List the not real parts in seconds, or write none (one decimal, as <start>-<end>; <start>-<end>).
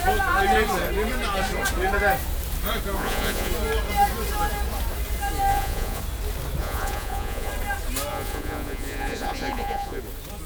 3.0-3.5; 5.5-6.0; 6.6-7.5; 8.1-10.0